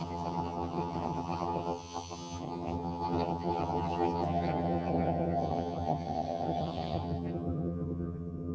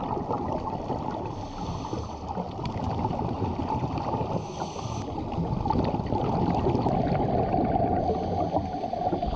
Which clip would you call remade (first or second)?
first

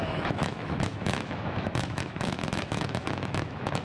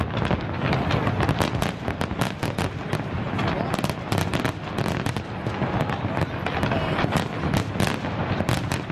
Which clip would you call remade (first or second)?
first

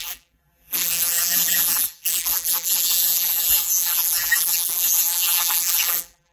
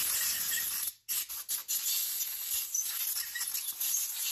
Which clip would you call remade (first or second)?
first